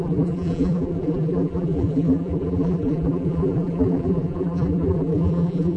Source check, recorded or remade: remade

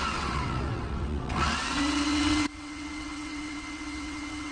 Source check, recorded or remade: remade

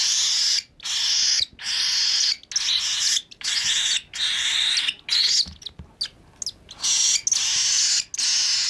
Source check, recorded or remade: recorded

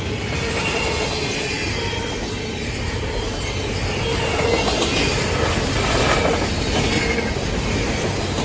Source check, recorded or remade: recorded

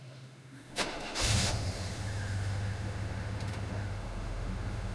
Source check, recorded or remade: remade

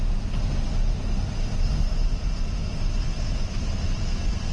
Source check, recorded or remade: recorded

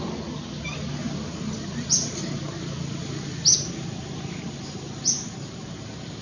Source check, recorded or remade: recorded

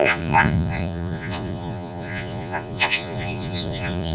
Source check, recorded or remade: remade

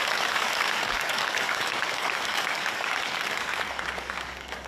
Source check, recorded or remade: remade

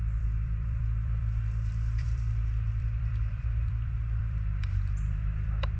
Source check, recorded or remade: remade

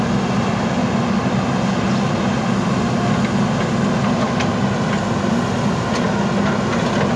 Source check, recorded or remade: recorded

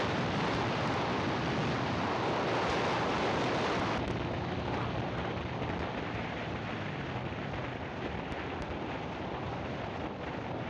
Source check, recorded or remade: recorded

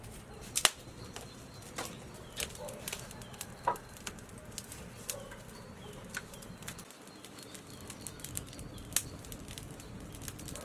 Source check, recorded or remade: recorded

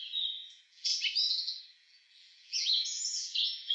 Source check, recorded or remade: remade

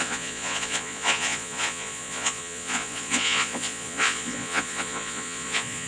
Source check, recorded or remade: remade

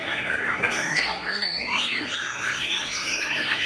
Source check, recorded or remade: remade